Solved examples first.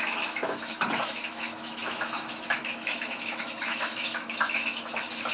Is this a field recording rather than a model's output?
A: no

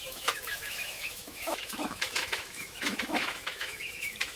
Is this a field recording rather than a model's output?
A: no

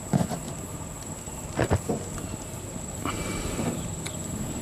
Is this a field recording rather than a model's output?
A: yes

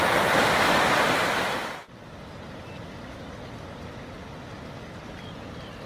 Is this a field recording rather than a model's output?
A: yes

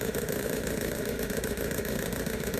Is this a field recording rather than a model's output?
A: no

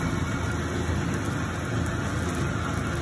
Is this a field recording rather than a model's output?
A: yes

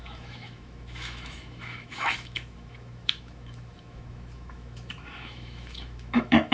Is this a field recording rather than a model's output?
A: no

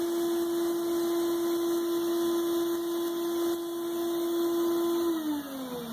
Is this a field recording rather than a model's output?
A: yes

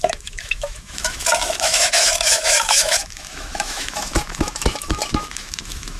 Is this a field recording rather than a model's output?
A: no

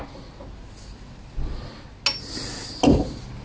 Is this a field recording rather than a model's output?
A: yes